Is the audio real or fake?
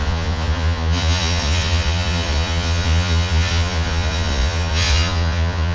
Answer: fake